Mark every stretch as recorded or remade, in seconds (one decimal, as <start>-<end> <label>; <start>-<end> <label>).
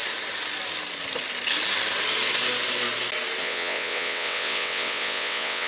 0.0-3.4 recorded; 3.4-5.7 remade